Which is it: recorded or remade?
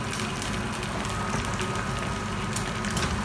recorded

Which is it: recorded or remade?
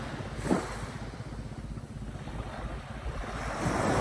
recorded